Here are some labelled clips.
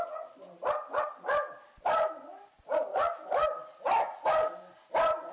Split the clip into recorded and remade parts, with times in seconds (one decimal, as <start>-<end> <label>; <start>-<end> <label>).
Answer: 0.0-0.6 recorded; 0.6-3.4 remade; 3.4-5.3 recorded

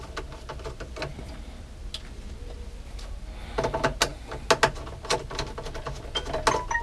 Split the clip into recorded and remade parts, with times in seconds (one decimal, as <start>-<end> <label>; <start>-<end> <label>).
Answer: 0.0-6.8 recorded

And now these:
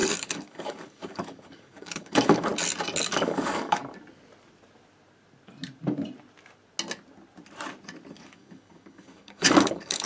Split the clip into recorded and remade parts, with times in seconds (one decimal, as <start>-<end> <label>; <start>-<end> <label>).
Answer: 0.0-2.5 remade; 2.5-3.1 recorded; 3.1-3.8 remade; 3.8-8.1 recorded; 8.1-10.1 remade

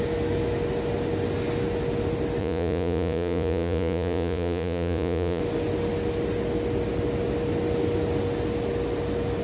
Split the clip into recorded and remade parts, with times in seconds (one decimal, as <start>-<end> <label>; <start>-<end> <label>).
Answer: 0.0-2.4 recorded; 2.4-5.4 remade; 5.4-9.4 recorded